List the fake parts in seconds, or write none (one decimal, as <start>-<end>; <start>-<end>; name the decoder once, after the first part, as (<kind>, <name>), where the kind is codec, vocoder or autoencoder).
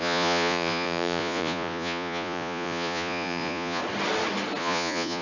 0.0-3.8 (vocoder, Vocos); 4.6-5.2